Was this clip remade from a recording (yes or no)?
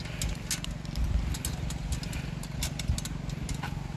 no